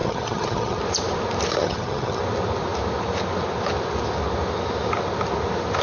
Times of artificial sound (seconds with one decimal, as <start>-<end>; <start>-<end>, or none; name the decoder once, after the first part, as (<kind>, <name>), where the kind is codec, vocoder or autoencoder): 0.0-0.8 (vocoder, HiFi-GAN); 1.6-2.2